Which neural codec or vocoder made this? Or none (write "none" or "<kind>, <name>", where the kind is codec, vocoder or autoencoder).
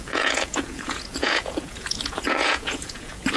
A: vocoder, Vocos